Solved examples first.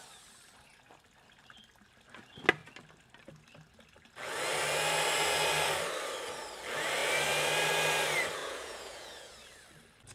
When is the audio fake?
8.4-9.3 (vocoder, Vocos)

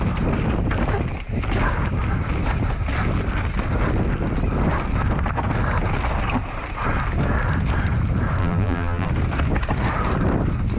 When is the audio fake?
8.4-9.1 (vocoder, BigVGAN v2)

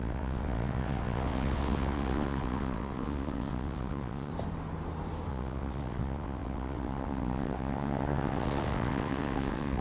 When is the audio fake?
0.0-4.3 (vocoder, WaveNeXt); 5.3-9.8

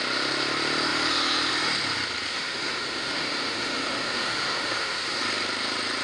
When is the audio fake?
2.3-5.2 (autoencoder, DAC-VAE)

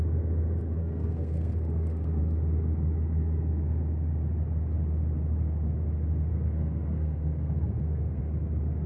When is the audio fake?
0.8-2.2 (codec, SNAC); 6.3-8.2